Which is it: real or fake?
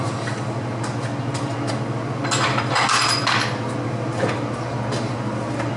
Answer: real